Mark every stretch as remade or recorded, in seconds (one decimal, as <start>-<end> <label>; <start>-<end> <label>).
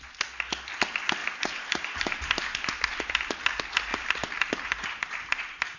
0.0-1.2 recorded; 1.2-2.4 remade; 2.4-3.9 recorded; 3.9-5.8 remade